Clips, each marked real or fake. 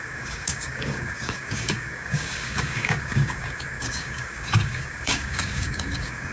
fake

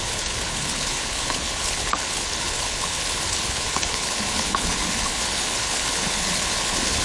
fake